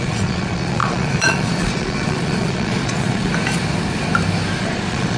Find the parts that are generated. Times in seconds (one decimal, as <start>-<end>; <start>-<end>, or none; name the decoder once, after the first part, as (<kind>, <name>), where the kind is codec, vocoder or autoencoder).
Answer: 0.0-3.3 (vocoder, Vocos); 4.6-5.2